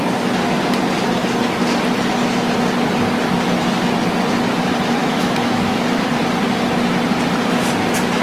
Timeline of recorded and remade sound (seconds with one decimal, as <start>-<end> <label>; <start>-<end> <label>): 0.0-5.0 recorded; 5.0-6.1 remade; 6.1-8.2 recorded

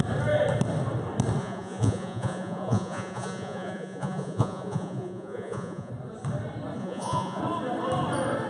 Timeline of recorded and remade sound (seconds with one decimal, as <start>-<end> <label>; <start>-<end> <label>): 0.0-1.4 recorded; 1.4-5.9 remade; 5.9-6.8 recorded; 6.8-7.4 remade; 7.4-8.5 recorded